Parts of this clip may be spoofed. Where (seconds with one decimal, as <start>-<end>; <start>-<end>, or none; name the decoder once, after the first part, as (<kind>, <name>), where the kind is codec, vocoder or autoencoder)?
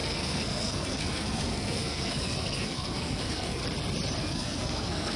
0.0-3.6 (codec, SNAC); 4.2-5.2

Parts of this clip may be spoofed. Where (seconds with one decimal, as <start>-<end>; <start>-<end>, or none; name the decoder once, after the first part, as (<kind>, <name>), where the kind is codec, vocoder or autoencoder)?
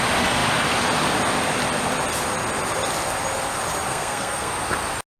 3.9-4.5 (codec, SNAC)